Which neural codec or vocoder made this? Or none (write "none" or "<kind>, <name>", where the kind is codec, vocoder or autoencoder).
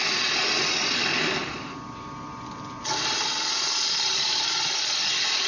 none